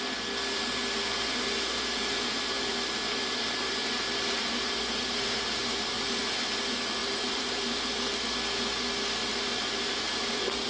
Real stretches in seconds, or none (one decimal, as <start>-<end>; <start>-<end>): 0.0-1.3; 6.2-7.0; 8.0-9.3